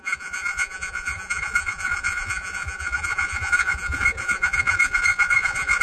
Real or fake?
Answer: fake